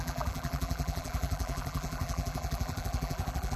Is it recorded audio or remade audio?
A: remade